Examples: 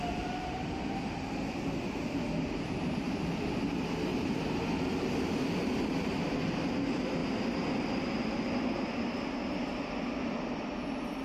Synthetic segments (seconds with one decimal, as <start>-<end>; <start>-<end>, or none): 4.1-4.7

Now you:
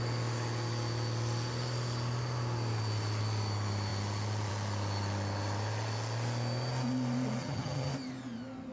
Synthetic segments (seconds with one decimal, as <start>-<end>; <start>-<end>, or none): 7.4-7.9

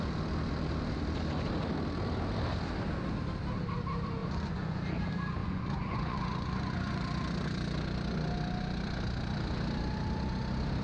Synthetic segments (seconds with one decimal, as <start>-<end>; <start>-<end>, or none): 4.2-4.8; 5.4-7.0

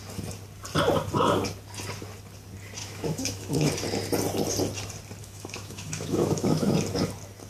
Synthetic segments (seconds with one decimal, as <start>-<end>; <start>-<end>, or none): 2.8-3.7; 5.2-6.7

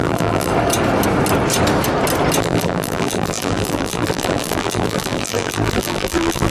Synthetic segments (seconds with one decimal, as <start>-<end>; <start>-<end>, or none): 0.0-0.5; 2.4-6.5

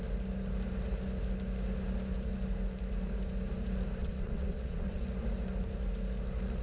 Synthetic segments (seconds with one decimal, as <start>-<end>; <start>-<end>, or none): 4.0-5.0

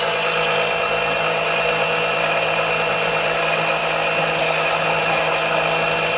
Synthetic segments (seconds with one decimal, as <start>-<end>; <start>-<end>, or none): none

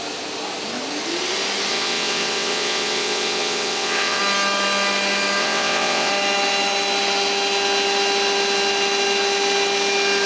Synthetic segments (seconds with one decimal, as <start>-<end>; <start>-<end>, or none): 1.7-4.2; 5.4-6.1